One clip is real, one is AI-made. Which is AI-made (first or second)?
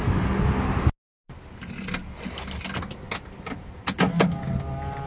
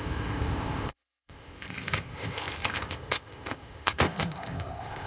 second